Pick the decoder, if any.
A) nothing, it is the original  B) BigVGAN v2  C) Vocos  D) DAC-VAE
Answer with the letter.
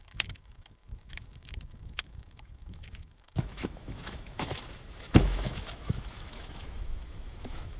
D